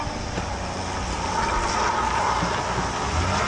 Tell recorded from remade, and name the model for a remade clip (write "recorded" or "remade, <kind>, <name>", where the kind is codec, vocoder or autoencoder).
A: recorded